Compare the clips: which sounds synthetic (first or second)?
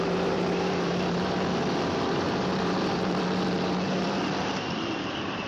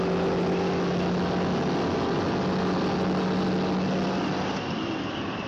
first